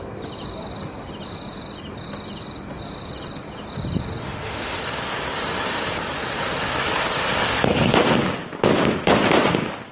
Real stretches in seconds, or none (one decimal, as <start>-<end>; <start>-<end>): 0.0-4.2; 4.8-9.9